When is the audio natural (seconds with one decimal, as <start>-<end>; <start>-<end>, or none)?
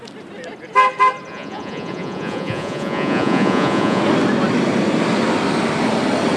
0.0-1.3; 4.0-6.4